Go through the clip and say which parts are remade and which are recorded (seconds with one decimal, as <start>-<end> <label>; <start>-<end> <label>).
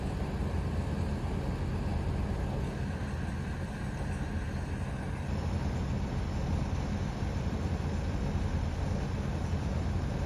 0.0-10.3 recorded